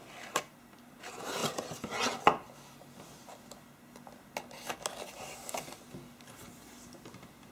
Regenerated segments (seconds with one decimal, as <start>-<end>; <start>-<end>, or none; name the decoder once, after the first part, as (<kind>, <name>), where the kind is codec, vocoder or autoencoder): none